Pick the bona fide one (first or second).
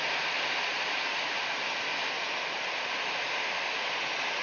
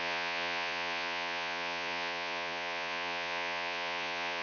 first